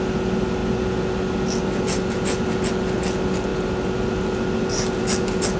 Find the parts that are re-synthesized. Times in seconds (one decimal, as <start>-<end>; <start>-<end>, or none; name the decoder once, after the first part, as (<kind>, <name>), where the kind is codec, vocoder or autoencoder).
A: none